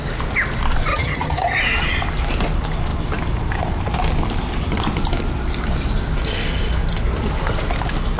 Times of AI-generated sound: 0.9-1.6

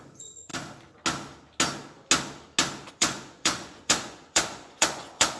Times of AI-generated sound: 0.0-0.5; 2.9-5.4

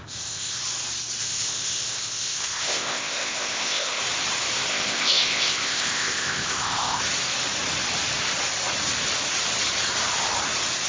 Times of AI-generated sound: 0.0-0.6; 1.2-4.0; 4.7-7.0